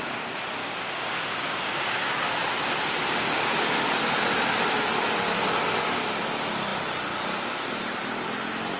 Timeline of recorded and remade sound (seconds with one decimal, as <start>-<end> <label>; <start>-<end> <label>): 0.0-0.6 recorded; 0.6-2.3 remade; 2.3-8.8 recorded